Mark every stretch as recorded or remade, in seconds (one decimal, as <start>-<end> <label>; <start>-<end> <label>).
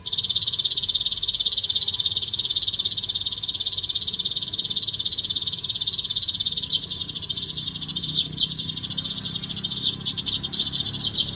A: 0.0-1.6 recorded; 1.6-2.5 remade; 2.5-11.4 recorded